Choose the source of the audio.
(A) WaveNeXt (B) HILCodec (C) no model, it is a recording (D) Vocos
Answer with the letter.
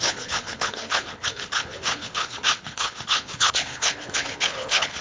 B